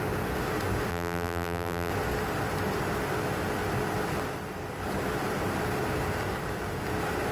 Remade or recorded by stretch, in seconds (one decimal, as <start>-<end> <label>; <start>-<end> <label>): 0.0-0.9 recorded; 0.9-1.9 remade; 1.9-7.3 recorded